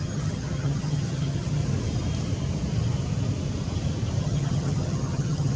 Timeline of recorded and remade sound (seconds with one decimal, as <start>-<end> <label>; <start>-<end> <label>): 0.0-1.6 remade; 1.6-4.2 recorded; 4.2-5.6 remade